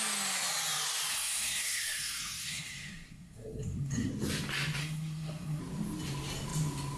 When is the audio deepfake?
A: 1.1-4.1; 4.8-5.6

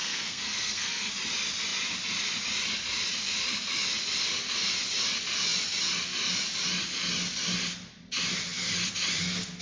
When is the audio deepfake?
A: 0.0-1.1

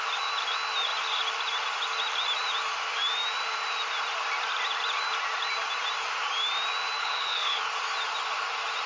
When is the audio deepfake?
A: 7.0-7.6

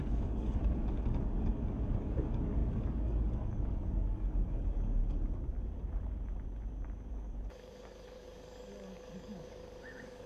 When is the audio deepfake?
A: 0.0-5.0; 7.1-10.3

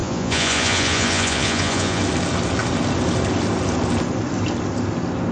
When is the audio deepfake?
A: 0.0-2.0

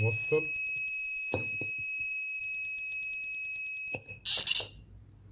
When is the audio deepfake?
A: 0.9-2.4

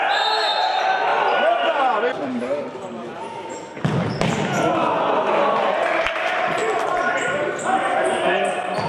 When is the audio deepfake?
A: 1.1-4.1; 6.6-8.2